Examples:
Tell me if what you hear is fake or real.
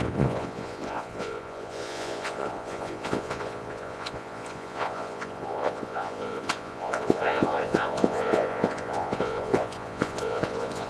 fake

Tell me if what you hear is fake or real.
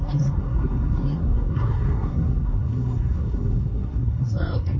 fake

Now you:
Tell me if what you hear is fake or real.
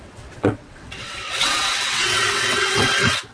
fake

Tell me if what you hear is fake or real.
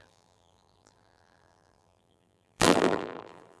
fake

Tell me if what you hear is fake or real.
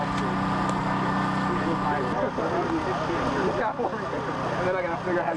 real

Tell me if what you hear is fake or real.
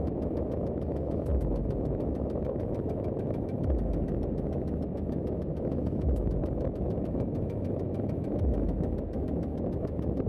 fake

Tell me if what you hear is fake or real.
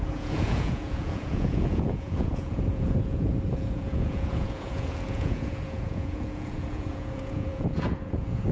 fake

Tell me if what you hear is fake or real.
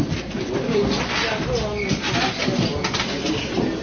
real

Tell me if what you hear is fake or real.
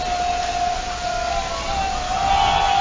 real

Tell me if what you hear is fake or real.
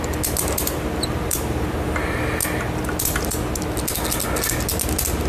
real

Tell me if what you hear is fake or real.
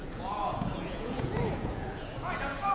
fake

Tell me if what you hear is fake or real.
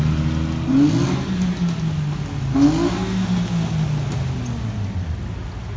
real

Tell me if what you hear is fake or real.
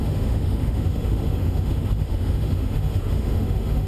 fake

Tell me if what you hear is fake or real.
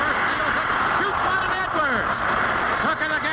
real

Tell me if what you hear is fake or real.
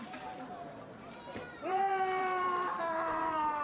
fake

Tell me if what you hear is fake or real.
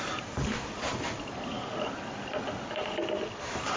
real